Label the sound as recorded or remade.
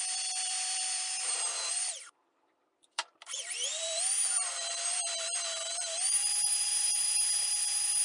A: remade